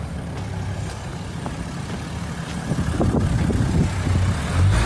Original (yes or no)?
yes